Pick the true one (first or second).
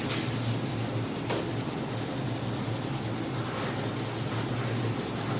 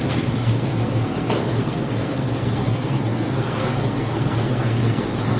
first